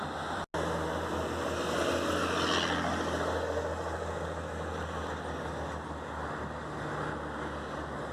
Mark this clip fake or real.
real